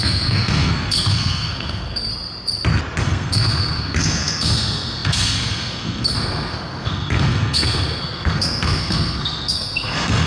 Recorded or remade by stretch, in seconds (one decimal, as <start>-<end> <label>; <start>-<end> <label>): 0.0-2.1 remade; 2.1-3.0 recorded; 3.0-10.3 remade